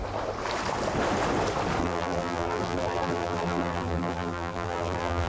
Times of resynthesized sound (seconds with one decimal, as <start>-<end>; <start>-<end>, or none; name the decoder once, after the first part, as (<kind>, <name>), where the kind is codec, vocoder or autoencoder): 1.8-5.3 (vocoder, BigVGAN v2)

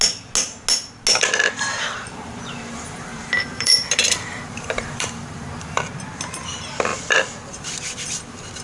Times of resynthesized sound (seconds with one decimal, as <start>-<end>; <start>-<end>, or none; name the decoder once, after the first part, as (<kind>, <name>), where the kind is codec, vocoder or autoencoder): 2.0-5.8 (vocoder, BigVGAN v2)

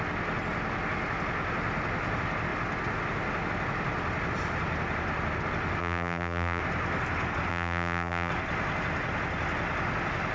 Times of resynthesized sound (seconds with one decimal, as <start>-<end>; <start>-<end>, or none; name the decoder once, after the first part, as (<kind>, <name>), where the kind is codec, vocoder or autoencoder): 5.8-6.6 (vocoder, BigVGAN v2); 7.5-8.3

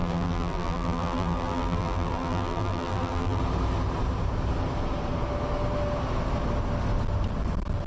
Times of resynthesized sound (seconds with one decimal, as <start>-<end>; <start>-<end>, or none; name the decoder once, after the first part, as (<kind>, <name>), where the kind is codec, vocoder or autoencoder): 0.0-3.4 (vocoder, BigVGAN v2)